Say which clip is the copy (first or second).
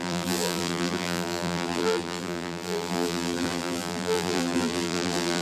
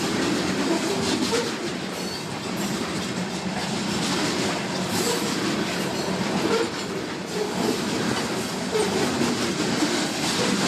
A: first